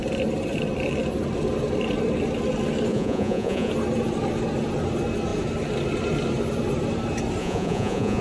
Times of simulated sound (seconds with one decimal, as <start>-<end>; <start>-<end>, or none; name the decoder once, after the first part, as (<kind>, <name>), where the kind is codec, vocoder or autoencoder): 2.9-3.7 (vocoder, Vocos); 7.4-8.2